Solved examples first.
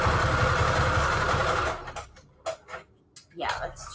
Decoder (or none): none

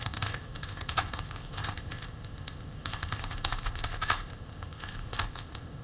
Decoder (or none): codec, ZipCodec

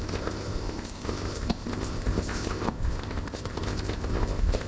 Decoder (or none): codec, ZipCodec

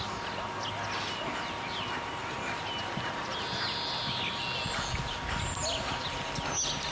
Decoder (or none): none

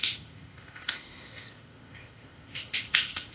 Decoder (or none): codec, ZipCodec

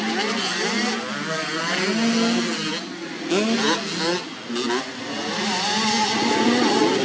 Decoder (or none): none